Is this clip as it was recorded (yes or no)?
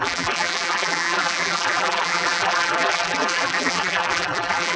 no